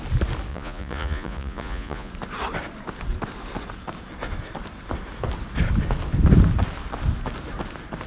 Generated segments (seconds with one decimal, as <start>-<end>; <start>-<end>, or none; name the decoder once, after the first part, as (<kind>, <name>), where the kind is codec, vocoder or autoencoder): 0.5-2.1 (vocoder, Vocos)